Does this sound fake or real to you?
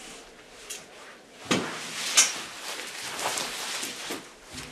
real